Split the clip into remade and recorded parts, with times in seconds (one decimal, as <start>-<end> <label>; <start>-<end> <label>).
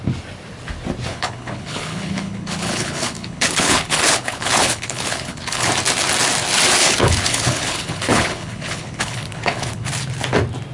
0.0-1.1 recorded; 1.1-5.7 remade; 5.7-6.8 recorded; 6.8-9.9 remade; 9.9-10.7 recorded